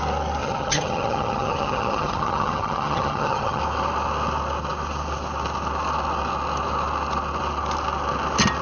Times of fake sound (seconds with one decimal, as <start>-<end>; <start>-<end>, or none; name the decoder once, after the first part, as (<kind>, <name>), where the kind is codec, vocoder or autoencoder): 0.4-3.6 (vocoder, HiFi-GAN)